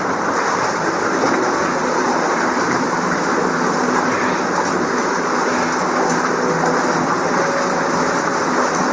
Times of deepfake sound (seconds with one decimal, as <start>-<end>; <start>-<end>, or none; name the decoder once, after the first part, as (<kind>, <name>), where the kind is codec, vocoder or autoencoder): 1.8-3.2 (vocoder, BigVGAN v2)